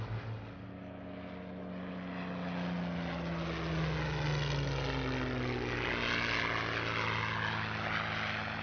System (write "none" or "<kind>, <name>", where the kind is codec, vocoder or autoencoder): none